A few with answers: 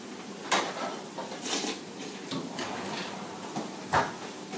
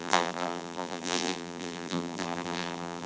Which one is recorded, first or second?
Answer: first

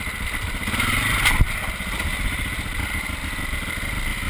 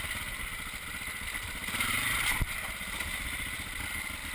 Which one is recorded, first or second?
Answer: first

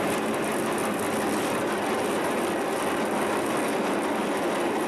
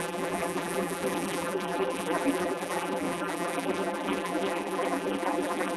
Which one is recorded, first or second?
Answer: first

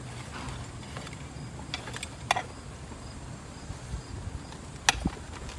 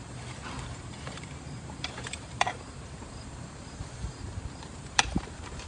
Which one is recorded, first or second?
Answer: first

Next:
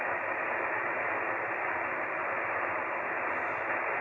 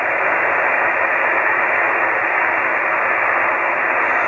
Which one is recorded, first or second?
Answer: second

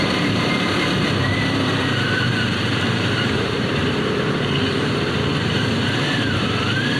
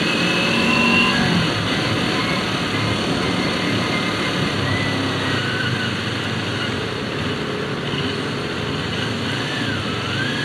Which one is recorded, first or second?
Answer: second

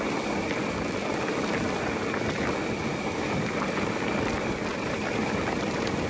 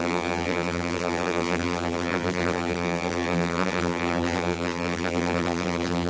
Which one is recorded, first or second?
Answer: first